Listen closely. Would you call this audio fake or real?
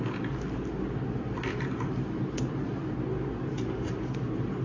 real